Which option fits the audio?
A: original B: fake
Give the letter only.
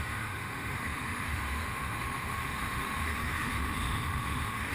B